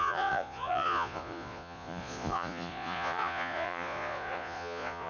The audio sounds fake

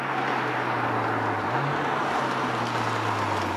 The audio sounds real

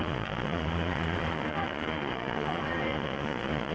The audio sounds fake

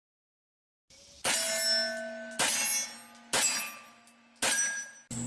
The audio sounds real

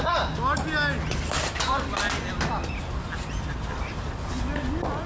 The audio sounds real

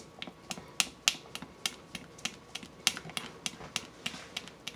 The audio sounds real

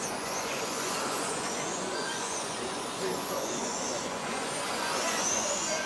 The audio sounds fake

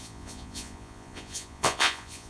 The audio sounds fake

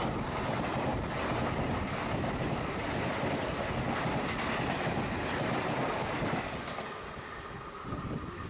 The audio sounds real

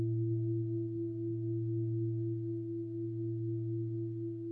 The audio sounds real